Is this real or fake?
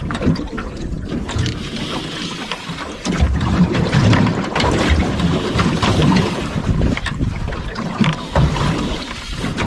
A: fake